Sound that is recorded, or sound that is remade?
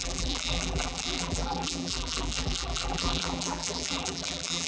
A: remade